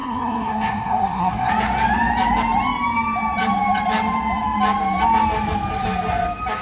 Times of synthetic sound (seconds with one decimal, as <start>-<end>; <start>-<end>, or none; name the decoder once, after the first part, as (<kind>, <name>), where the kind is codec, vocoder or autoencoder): 0.0-1.5 (codec, SNAC)